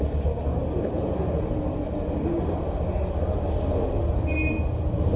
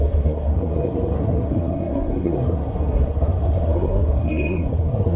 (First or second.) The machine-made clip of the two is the second